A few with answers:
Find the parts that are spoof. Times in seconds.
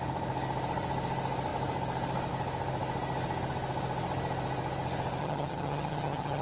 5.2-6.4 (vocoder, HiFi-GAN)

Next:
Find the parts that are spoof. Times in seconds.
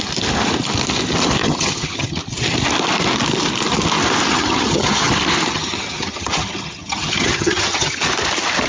1.4-2.2 (vocoder, HiFi-GAN); 4.3-5.1; 5.5-8.0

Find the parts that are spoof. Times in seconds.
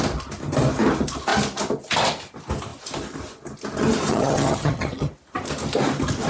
4.1-5.1 (vocoder, HiFi-GAN)